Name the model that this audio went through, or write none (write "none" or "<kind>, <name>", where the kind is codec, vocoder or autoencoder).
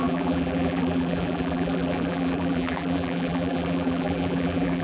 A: vocoder, BigVGAN v2